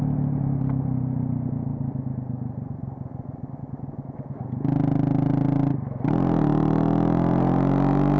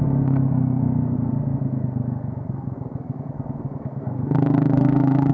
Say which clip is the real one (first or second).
first